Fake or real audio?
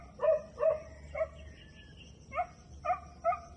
real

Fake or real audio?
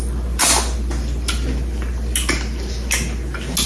real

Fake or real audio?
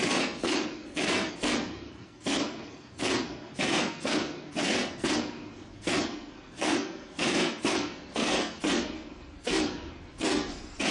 fake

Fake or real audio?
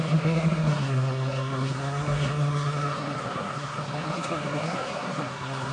fake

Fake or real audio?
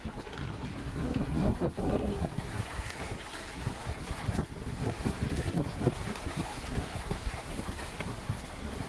fake